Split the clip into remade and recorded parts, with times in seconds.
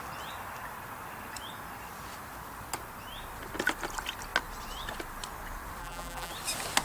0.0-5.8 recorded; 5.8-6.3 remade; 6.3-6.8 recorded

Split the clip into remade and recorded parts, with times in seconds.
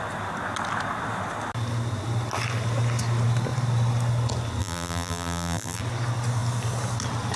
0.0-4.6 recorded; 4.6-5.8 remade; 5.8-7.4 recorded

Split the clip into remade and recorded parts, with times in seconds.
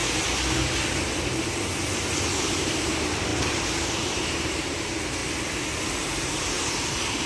0.0-2.3 recorded; 2.3-5.2 remade; 5.2-5.8 recorded; 5.8-7.3 remade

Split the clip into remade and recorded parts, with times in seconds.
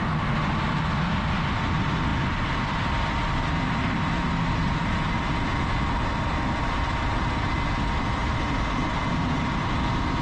0.0-8.2 recorded; 8.2-9.7 remade; 9.7-10.2 recorded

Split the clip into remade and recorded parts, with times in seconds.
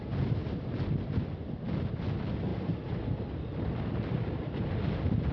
0.0-2.5 recorded; 2.5-4.7 remade; 4.7-5.3 recorded